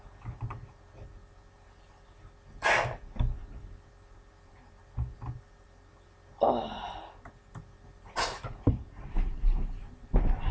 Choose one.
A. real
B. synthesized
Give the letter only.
A